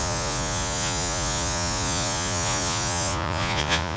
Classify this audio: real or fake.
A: fake